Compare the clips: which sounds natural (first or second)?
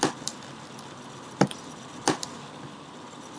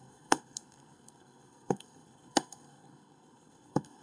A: first